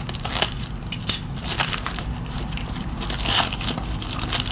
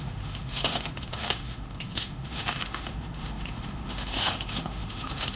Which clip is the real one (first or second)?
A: first